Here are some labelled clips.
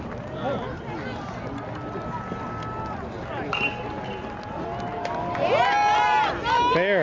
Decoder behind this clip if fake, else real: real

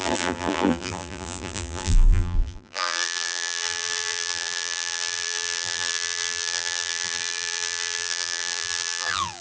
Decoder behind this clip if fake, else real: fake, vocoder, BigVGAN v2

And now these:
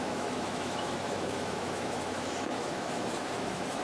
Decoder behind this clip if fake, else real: fake, autoencoder, DAC-VAE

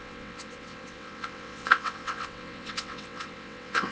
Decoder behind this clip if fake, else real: fake, vocoder, WaveNeXt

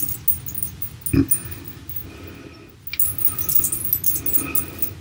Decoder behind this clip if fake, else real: real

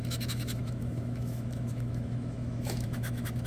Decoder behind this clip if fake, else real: fake, autoencoder, DAC-VAE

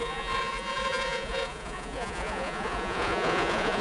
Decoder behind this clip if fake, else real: fake, vocoder, Vocos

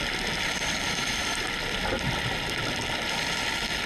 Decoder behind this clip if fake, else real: real